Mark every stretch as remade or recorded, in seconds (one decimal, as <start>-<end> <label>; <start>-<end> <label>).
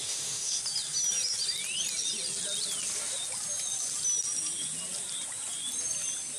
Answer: 0.0-0.6 remade; 0.6-6.4 recorded